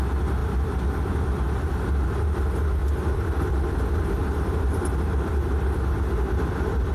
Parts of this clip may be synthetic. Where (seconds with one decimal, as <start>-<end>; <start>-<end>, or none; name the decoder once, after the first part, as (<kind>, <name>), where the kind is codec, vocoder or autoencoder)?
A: 0.4-2.1 (vocoder, BigVGAN v2); 2.8-6.9